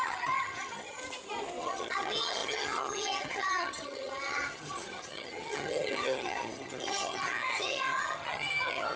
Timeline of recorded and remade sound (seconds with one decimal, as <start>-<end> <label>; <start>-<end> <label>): 0.0-1.0 remade; 1.0-1.6 recorded; 1.6-9.0 remade